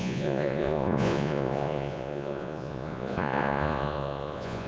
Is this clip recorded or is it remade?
remade